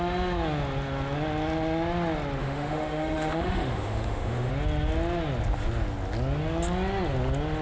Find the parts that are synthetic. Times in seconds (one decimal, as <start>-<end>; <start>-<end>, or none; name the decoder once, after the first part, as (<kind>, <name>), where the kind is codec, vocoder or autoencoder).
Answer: 2.4-4.5 (autoencoder, DAC-VAE)